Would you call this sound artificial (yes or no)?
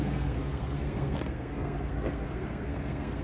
yes